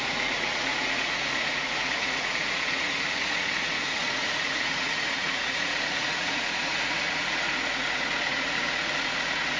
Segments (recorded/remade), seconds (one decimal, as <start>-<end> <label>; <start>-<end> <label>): 0.0-9.6 remade